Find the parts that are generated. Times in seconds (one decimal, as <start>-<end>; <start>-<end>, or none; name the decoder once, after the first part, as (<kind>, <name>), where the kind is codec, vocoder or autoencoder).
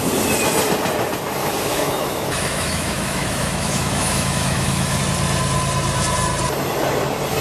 1.4-5.0 (autoencoder, DAC-VAE)